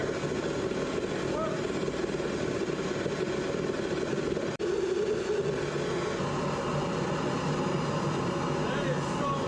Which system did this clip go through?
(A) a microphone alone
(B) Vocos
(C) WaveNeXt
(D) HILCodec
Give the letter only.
A